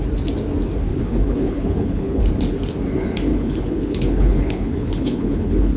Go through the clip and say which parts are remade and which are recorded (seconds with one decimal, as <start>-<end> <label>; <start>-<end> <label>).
0.0-0.9 recorded; 0.9-2.2 remade; 2.2-3.3 recorded; 3.3-5.8 remade